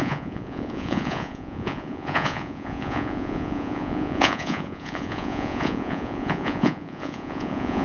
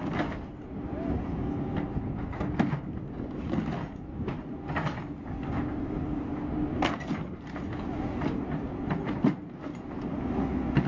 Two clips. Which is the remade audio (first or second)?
first